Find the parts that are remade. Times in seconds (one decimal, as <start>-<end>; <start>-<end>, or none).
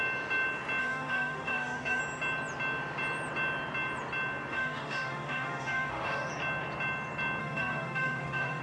0.8-2.0; 4.5-6.3; 7.4-8.6